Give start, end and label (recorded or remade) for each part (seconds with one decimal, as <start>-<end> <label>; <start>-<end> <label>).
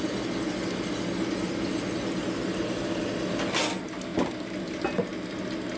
0.0-5.8 recorded